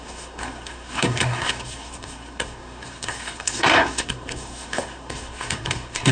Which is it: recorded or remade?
remade